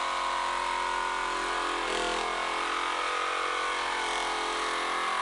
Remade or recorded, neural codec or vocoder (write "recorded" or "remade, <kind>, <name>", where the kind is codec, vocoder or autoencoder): recorded